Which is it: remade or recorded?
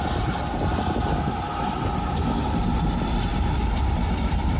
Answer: recorded